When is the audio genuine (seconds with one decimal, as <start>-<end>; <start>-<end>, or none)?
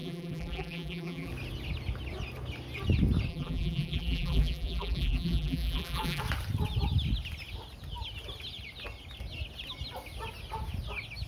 1.3-3.3; 6.2-11.3